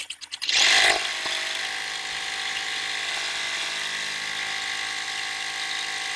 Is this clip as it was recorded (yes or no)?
yes